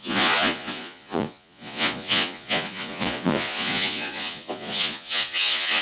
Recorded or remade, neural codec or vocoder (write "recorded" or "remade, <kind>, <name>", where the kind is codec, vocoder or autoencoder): remade, vocoder, Vocos